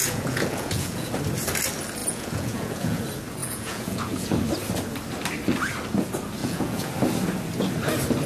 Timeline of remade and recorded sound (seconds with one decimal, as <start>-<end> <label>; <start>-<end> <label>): 0.0-1.1 remade; 1.1-2.0 recorded; 2.0-3.0 remade; 3.0-3.4 recorded; 3.4-4.3 remade; 4.3-6.4 recorded; 6.4-6.9 remade; 6.9-8.3 recorded